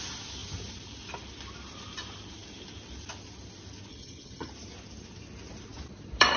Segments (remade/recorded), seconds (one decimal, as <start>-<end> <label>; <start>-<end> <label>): 0.0-3.9 recorded; 3.9-4.5 remade; 4.5-6.4 recorded